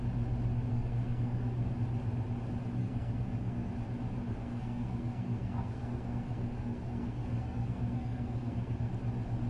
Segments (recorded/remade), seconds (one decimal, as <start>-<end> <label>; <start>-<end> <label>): 0.0-0.7 recorded; 0.7-1.7 remade; 1.7-2.8 recorded; 2.8-3.7 remade; 3.7-4.3 recorded; 4.3-8.9 remade; 8.9-9.5 recorded